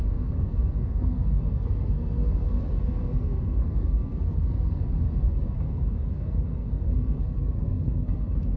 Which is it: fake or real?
fake